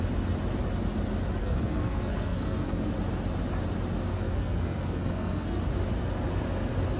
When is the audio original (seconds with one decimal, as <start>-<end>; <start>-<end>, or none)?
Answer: 0.0-1.4; 2.9-4.1; 5.6-7.0